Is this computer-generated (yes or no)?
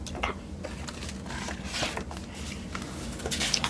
no